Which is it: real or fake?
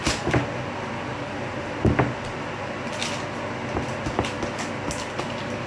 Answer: real